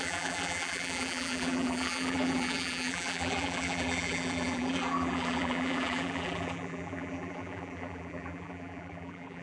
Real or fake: fake